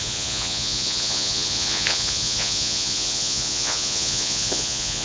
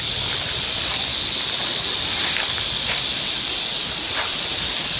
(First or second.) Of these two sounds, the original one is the second